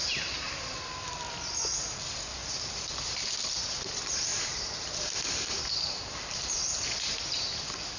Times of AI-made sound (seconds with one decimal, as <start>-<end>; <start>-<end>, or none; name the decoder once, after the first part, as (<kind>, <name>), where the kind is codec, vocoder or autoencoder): 4.3-7.1 (vocoder, BigVGAN v2)